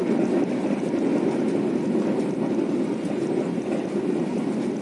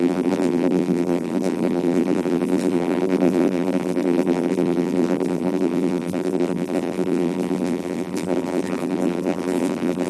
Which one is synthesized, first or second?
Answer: second